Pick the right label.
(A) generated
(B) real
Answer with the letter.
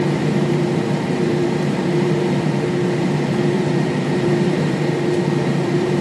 A